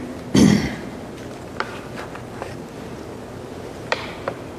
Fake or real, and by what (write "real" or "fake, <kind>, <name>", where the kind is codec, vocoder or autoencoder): real